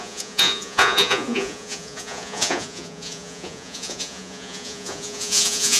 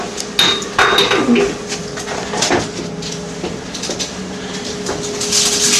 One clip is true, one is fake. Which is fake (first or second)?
first